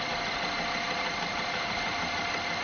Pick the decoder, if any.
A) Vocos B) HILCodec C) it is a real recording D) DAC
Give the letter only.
C